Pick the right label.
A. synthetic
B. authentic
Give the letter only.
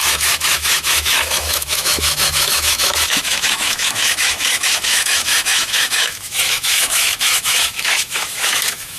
A